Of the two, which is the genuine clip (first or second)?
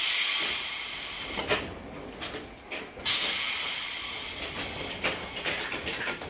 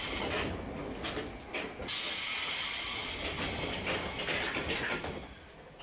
second